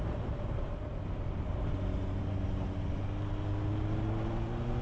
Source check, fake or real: real